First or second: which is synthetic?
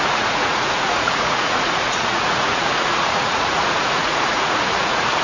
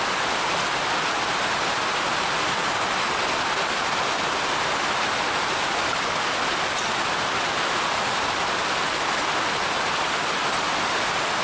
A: first